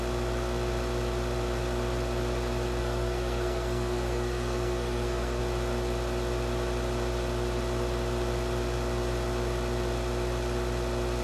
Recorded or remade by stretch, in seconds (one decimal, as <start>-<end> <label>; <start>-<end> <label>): 0.0-2.8 recorded; 2.8-5.4 remade; 5.4-11.2 recorded